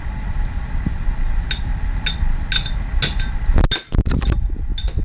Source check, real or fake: real